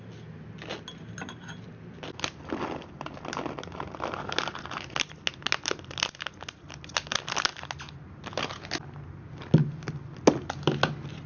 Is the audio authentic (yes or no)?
yes